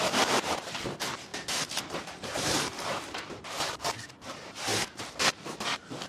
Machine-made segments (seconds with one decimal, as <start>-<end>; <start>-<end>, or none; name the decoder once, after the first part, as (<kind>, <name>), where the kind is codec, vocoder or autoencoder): 0.0-1.3 (vocoder, BigVGAN v2); 2.0-4.7